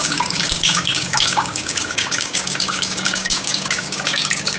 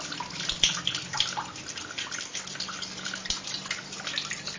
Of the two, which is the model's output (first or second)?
first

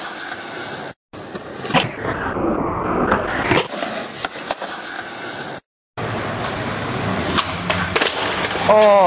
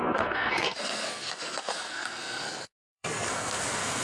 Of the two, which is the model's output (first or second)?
second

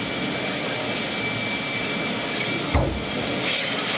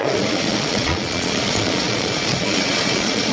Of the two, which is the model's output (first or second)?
second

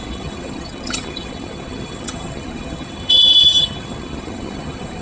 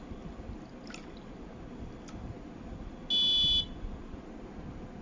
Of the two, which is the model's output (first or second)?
first